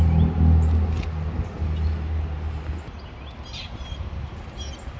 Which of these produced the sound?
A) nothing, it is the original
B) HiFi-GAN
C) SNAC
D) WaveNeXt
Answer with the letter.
A